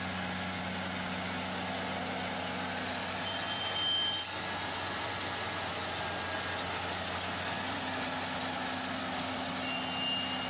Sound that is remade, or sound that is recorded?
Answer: recorded